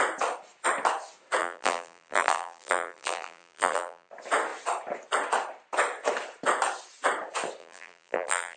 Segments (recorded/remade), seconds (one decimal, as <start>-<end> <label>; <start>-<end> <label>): 0.0-1.4 recorded; 1.4-4.1 remade; 4.1-7.6 recorded; 7.6-8.6 remade